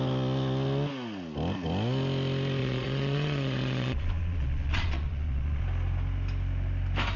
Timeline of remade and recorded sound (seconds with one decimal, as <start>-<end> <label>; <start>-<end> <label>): 0.0-2.6 recorded; 2.6-5.6 remade; 5.6-7.2 recorded